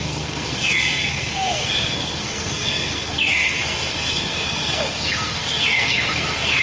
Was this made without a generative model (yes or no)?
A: no